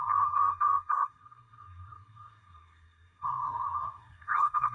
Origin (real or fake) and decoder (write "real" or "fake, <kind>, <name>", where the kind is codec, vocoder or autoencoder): fake, codec, SNAC